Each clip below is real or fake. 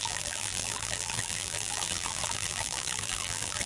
fake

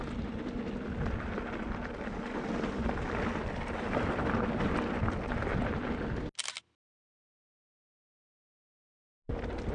real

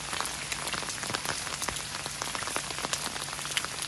real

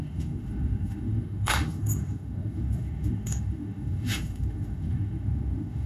fake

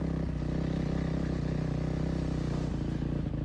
real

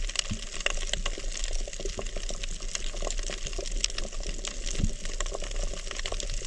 real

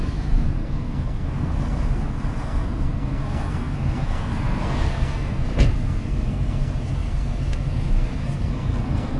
fake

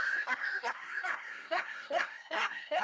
fake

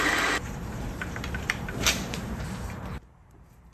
fake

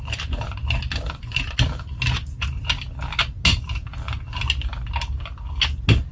real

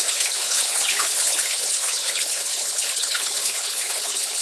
fake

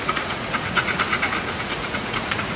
fake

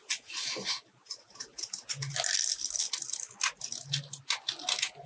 real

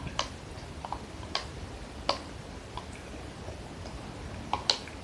real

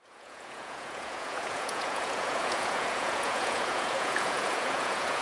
fake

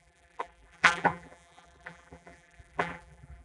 fake